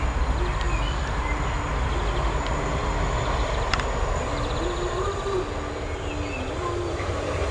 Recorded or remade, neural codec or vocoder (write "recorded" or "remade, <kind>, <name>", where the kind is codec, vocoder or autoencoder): recorded